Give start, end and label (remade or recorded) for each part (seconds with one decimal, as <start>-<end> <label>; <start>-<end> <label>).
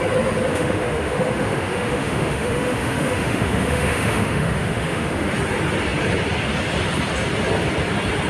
0.0-0.5 recorded; 0.5-5.3 remade; 5.3-8.3 recorded